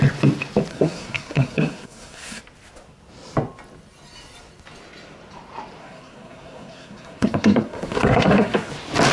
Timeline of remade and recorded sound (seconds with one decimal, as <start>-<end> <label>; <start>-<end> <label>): 0.0-0.7 recorded; 0.7-2.4 remade; 2.4-5.8 recorded; 5.8-8.7 remade; 8.7-9.1 recorded